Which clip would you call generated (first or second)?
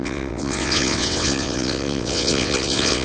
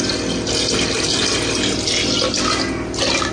first